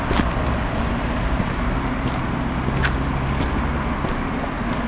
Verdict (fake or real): real